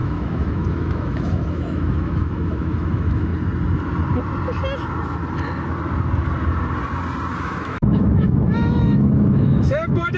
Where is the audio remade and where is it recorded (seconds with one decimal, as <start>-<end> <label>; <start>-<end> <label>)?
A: 0.0-3.3 remade; 3.3-7.4 recorded; 7.4-10.2 remade